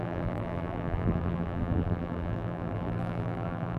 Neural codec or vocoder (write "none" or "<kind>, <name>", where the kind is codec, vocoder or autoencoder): vocoder, BigVGAN v2